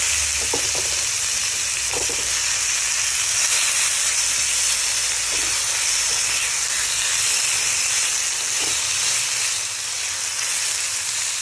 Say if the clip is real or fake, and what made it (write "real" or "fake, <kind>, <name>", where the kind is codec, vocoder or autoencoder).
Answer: real